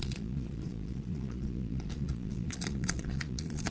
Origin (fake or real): fake